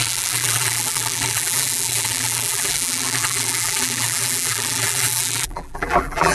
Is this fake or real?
fake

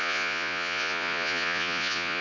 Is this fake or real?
fake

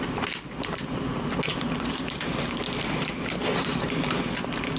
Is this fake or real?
real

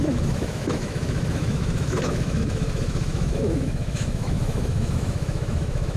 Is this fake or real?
fake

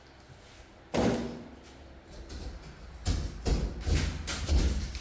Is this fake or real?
real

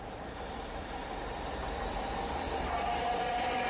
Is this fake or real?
fake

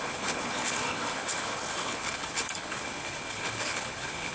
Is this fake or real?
fake